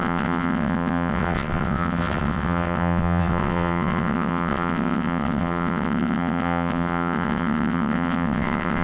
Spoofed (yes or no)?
yes